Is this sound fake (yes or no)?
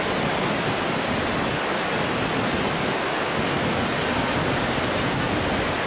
no